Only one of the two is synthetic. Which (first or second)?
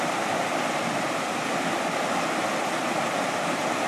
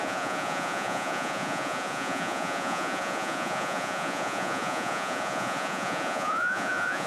second